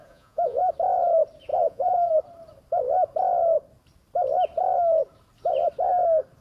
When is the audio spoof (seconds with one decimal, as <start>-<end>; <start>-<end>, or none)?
0.0-0.7; 1.5-2.2